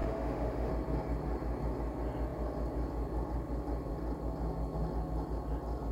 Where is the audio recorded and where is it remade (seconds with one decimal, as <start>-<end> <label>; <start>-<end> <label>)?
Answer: 0.0-0.7 remade; 0.7-5.9 recorded